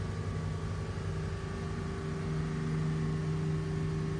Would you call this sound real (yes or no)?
yes